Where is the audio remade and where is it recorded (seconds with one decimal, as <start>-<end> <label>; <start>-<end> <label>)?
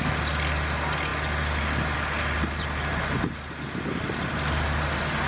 0.0-5.3 recorded